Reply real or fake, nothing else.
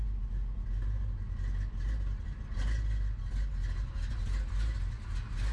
real